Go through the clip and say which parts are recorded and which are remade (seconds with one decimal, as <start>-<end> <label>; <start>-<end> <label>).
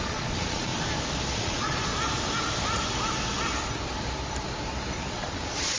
0.0-0.7 remade; 0.7-1.4 recorded; 1.4-1.9 remade; 1.9-5.1 recorded; 5.1-5.8 remade